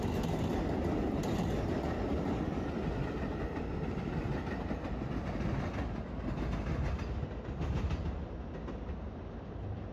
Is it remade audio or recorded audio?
recorded